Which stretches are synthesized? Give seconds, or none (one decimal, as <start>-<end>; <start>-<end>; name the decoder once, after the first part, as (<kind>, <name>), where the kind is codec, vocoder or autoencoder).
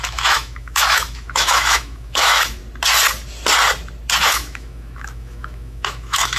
0.0-2.6 (autoencoder, DAC-VAE); 4.2-6.4